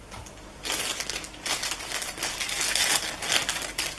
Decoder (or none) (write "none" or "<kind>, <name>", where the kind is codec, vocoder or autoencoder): none